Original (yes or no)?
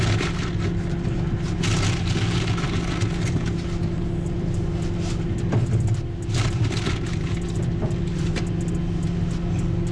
yes